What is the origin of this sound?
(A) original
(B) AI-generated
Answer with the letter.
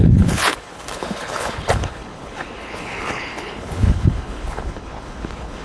B